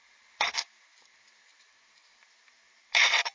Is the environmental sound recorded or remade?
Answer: recorded